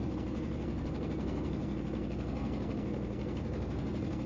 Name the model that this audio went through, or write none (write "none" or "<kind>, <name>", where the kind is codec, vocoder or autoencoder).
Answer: codec, SNAC